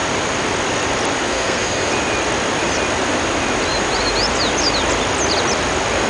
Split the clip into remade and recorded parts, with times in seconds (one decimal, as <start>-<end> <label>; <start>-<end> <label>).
0.0-1.3 recorded; 1.3-1.9 remade; 1.9-6.1 recorded